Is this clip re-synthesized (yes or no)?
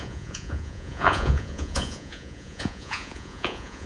yes